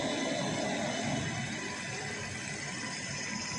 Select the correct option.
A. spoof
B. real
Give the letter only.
B